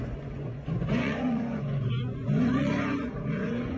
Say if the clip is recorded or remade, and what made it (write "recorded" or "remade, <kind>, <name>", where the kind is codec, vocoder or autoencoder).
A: remade, vocoder, Vocos